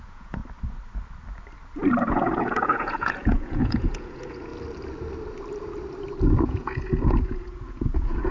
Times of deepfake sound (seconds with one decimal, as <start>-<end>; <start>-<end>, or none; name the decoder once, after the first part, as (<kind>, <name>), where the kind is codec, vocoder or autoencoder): 0.0-0.4 (vocoder, Vocos); 2.0-4.5; 6.4-8.3